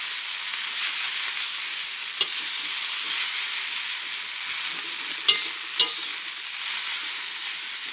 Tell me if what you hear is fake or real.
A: real